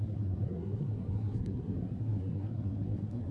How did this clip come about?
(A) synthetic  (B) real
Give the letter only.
A